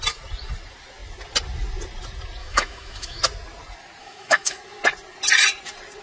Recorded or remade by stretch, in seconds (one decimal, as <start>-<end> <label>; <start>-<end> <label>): 0.0-2.4 recorded; 2.4-3.2 remade; 3.2-4.0 recorded; 4.0-4.6 remade; 4.6-6.0 recorded